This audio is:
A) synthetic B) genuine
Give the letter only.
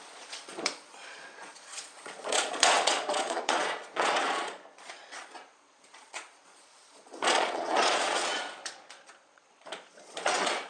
A